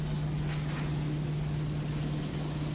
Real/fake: real